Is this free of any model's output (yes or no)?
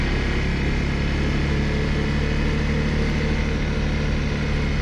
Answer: yes